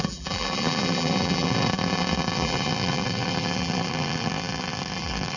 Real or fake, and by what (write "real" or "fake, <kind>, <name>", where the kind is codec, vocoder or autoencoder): fake, vocoder, BigVGAN v2